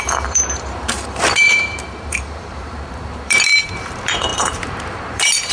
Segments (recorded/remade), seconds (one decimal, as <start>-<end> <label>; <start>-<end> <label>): 0.0-5.5 remade